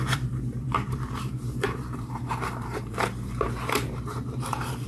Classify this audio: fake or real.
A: fake